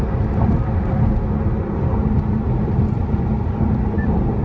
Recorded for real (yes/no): yes